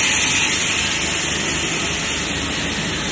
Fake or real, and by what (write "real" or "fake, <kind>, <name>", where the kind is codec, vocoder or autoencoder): real